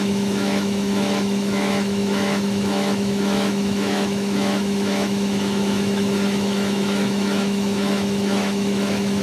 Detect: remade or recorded remade